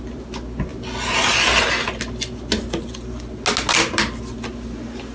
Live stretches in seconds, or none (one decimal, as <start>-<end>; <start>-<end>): 0.0-5.1